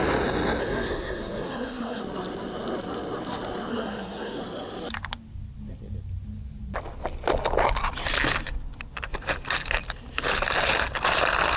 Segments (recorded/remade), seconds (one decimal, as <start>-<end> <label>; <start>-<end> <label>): 0.0-0.6 recorded; 0.6-2.0 remade; 2.0-3.7 recorded; 3.7-4.4 remade; 4.4-11.6 recorded

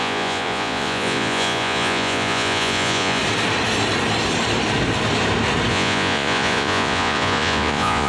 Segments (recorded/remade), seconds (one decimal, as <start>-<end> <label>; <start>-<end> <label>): 0.0-3.2 remade; 3.2-5.7 recorded; 5.7-8.1 remade